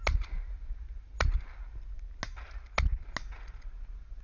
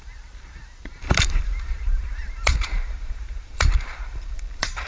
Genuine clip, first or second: first